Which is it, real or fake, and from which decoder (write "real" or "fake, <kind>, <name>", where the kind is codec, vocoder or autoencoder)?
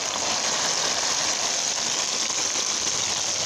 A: real